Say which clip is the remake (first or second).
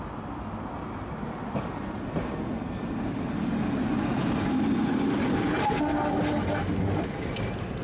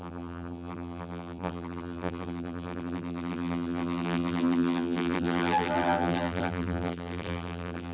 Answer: second